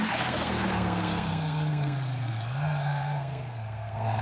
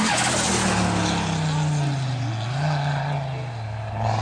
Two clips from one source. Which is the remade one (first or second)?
first